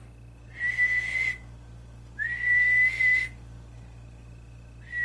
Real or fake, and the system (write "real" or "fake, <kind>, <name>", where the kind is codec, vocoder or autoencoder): real